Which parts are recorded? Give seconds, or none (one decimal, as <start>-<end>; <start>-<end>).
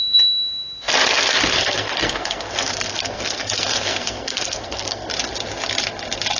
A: 0.0-1.6; 5.1-6.4